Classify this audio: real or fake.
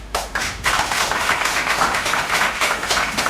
fake